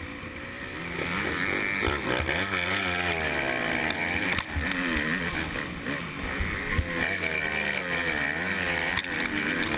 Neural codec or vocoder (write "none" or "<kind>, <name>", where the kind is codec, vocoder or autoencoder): none